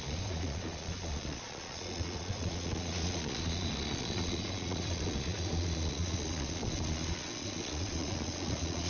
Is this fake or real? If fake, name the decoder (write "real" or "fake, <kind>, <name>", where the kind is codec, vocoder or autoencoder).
fake, vocoder, Vocos